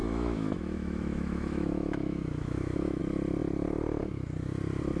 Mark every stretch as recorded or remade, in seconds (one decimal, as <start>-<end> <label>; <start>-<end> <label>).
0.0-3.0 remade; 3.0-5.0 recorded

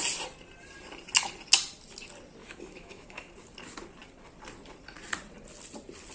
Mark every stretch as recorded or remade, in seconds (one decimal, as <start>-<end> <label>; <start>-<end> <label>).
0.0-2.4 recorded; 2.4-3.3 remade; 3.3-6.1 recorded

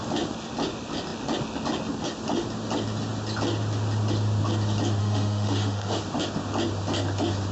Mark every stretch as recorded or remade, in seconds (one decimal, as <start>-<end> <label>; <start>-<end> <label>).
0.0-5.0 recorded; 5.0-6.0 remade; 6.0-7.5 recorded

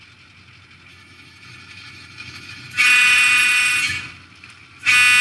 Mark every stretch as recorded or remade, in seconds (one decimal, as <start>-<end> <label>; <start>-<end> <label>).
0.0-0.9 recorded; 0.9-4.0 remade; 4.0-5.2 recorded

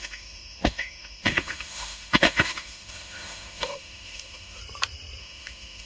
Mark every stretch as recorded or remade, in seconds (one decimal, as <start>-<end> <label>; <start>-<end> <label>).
0.0-4.6 remade; 4.6-5.2 recorded; 5.2-5.9 remade

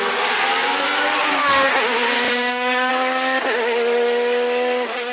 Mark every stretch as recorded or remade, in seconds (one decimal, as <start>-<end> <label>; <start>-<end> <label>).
0.0-2.3 recorded; 2.3-2.9 remade; 2.9-5.1 recorded

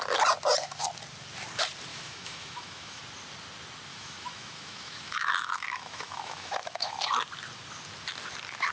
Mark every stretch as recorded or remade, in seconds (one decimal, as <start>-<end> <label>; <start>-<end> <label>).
0.0-1.9 recorded; 1.9-3.0 remade; 3.0-3.9 recorded; 3.9-7.1 remade; 7.1-8.7 recorded